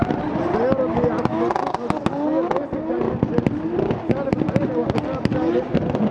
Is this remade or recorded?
recorded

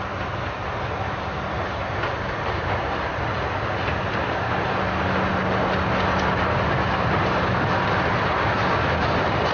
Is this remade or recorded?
recorded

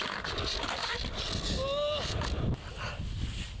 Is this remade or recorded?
recorded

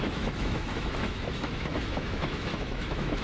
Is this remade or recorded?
remade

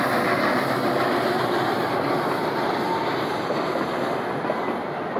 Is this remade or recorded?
recorded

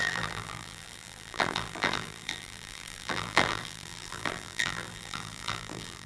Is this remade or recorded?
remade